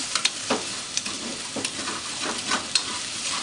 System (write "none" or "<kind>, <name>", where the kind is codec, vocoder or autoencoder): vocoder, BigVGAN v2